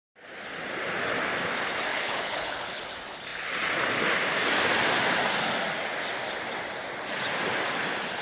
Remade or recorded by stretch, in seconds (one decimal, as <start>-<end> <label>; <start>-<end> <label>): 0.0-1.9 recorded; 1.9-2.8 remade; 2.8-8.2 recorded